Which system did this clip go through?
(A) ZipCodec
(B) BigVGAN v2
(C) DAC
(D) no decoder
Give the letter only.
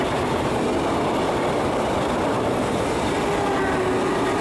D